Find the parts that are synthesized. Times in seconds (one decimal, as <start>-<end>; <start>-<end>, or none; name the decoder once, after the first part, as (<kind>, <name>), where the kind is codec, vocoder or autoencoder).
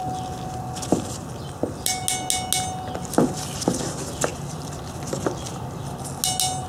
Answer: 4.3-4.9 (vocoder, BigVGAN v2)